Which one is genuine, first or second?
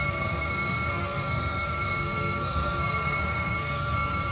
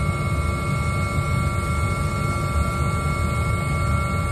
second